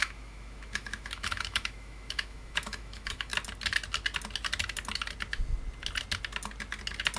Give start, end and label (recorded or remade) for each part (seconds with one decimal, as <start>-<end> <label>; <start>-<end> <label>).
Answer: 0.0-3.3 remade; 3.3-7.2 recorded